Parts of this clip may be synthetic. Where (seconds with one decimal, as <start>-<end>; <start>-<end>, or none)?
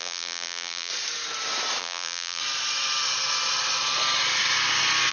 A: 0.0-0.9; 1.8-2.4